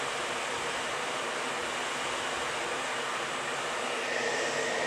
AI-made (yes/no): no